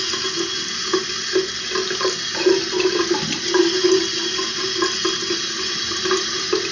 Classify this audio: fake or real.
real